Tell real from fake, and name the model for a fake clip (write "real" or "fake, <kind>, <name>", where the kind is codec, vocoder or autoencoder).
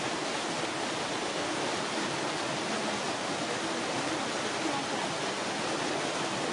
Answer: real